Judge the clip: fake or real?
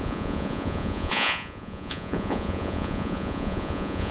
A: fake